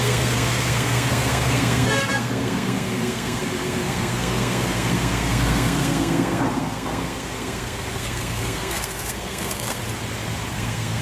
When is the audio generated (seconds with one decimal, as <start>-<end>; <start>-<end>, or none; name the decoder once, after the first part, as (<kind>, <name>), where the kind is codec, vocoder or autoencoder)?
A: 0.0-9.8 (codec, SNAC); 10.5-11.0